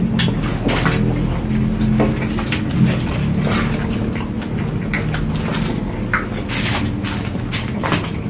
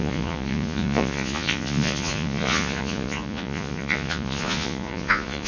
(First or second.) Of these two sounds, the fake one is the second